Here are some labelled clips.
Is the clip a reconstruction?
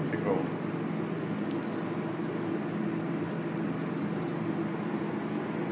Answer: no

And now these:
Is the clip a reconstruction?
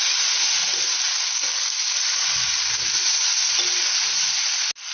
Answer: no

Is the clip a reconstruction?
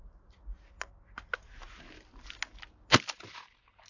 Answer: no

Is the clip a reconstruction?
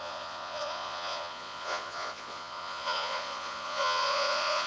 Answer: yes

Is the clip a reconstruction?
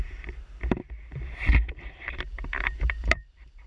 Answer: yes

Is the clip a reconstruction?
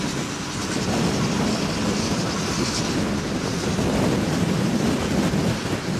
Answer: no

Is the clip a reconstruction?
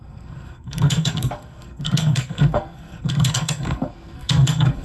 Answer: yes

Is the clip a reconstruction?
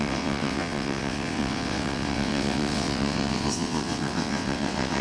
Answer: yes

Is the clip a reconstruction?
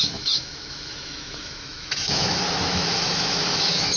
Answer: yes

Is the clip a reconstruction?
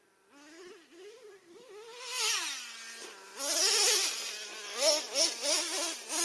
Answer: no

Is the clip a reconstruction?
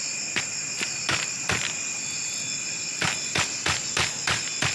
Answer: no